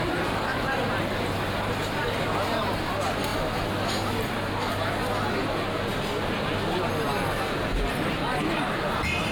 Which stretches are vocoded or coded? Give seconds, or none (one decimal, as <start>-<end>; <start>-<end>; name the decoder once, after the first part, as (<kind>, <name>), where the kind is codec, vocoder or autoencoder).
0.0-3.3 (vocoder, BigVGAN v2); 5.5-5.9; 7.9-9.3